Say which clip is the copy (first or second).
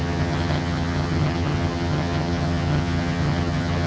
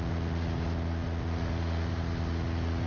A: first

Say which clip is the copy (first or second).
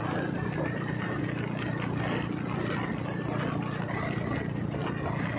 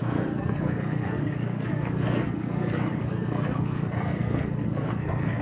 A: second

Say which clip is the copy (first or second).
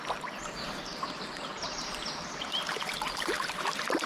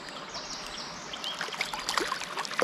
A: first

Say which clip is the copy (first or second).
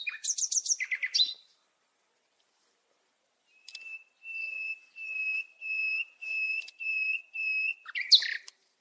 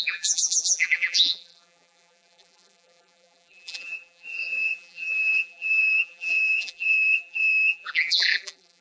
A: second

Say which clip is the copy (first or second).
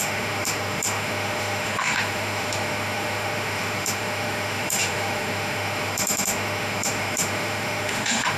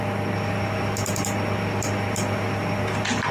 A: first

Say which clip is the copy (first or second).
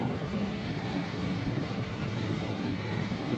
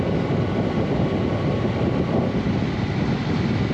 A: first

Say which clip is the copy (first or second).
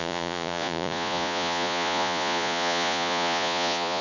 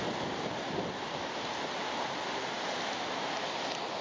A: first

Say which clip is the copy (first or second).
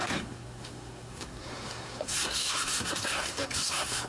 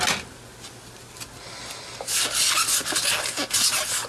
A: first